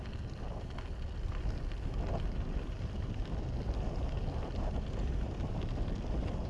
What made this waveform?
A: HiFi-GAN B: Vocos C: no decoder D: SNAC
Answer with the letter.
C